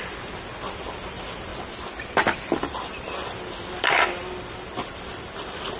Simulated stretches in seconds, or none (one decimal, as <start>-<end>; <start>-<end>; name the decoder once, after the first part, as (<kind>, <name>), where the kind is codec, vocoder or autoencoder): 0.0-1.5 (vocoder, BigVGAN v2); 2.6-5.8